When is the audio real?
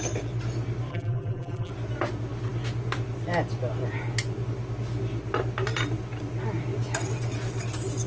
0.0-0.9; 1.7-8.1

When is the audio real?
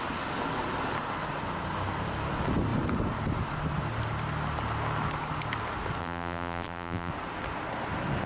0.0-6.0; 7.1-8.3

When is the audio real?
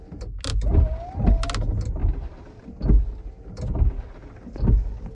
0.0-2.0; 2.6-5.1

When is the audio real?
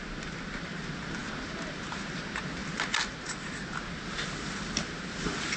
0.0-5.6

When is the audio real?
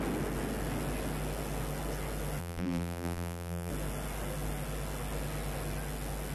0.0-2.4; 3.7-6.3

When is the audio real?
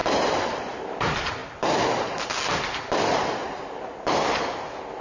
0.8-5.0